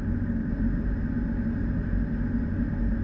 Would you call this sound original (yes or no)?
yes